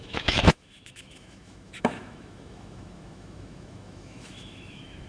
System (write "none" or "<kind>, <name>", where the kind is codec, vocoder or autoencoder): autoencoder, DAC-VAE